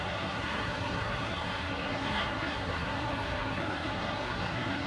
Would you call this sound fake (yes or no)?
yes